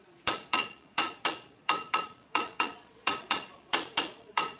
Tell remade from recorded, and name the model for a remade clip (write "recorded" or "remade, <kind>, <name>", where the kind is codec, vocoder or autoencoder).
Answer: remade, vocoder, Vocos